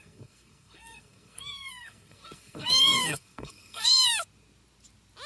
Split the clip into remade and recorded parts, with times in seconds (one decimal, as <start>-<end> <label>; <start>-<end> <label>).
0.0-4.1 remade; 4.1-5.3 recorded